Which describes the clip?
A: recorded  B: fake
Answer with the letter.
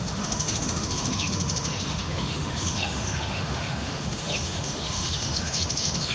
B